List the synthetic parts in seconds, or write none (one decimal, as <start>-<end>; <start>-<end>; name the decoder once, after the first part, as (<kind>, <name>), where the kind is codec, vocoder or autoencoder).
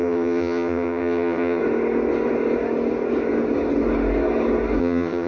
0.0-1.6 (vocoder, HiFi-GAN); 4.8-5.3